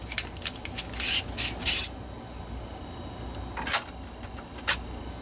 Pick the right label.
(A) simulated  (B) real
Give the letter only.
B